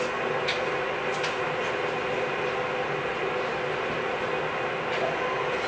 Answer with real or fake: real